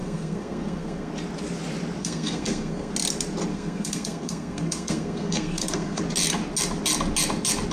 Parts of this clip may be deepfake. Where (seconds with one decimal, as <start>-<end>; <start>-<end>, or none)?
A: 0.0-1.1; 2.0-2.9; 3.5-6.0